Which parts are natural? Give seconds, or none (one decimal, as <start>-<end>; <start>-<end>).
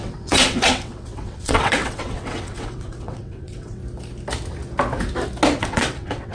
3.8-5.6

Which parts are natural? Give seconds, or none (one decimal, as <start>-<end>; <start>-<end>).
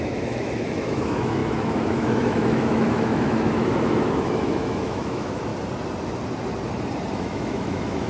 5.5-7.1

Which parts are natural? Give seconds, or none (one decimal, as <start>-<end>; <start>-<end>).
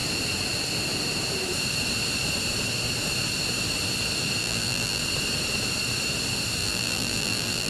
0.0-4.4; 5.0-6.6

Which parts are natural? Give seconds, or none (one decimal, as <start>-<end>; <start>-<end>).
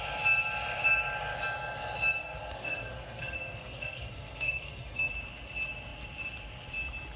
0.0-2.2; 5.1-7.2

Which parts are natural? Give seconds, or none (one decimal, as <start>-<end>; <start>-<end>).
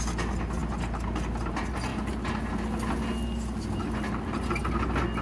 0.0-5.2